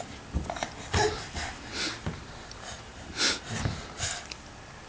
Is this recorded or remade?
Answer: recorded